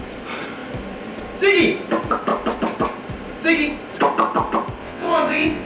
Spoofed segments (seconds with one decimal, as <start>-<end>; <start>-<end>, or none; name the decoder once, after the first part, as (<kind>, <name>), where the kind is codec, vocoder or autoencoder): 4.8-5.7 (vocoder, WaveNeXt)